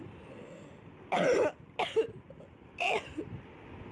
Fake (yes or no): no